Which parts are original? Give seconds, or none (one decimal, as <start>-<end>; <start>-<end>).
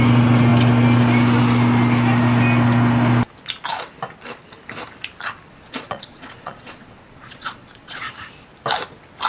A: 0.0-5.5; 8.1-9.3